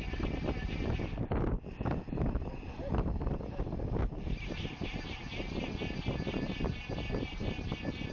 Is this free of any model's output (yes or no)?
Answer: yes